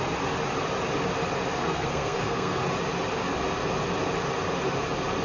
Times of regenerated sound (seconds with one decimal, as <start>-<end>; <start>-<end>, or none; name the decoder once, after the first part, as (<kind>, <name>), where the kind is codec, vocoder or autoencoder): 1.6-2.6 (codec, SNAC)